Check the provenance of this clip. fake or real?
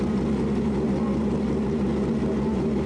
real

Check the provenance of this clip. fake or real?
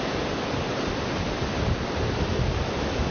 real